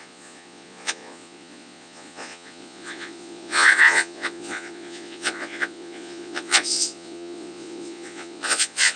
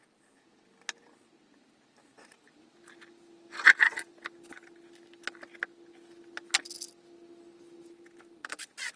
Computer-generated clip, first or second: first